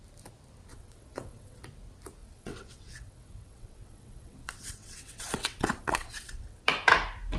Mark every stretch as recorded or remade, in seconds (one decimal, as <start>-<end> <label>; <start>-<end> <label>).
0.0-0.7 recorded; 0.7-1.6 remade; 1.6-2.2 recorded; 2.2-6.6 remade; 6.6-7.4 recorded